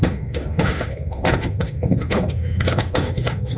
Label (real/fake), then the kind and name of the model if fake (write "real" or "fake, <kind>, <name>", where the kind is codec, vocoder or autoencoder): fake, autoencoder, DAC-VAE